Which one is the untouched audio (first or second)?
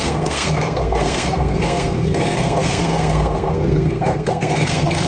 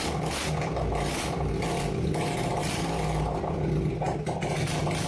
second